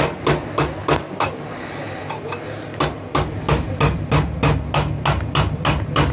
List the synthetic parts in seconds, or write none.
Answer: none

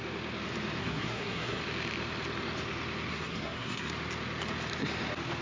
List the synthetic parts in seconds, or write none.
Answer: 0.8-1.6 (codec, SNAC); 3.1-3.9

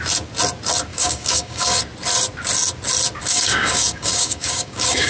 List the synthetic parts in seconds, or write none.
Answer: 0.9-1.8 (codec, DAC); 3.3-5.1

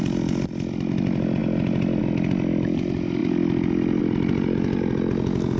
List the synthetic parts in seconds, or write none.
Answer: none

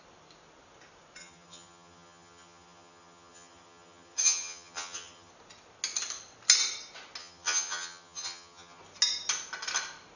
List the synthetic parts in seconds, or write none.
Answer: 1.2-5.3 (vocoder, HiFi-GAN); 7.2-8.8

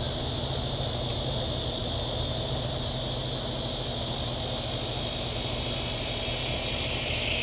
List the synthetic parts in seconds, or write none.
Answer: none

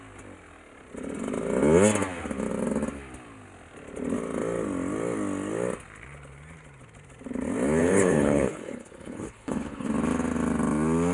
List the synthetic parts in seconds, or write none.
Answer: 7.8-9.9 (codec, HILCodec)

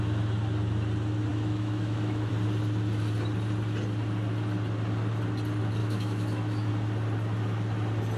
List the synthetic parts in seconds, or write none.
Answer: 1.3-2.3 (autoencoder, DAC-VAE); 5.8-6.7